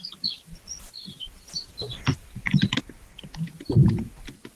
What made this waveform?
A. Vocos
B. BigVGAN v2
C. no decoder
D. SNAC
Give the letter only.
C